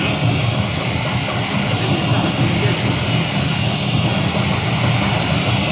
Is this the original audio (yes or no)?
yes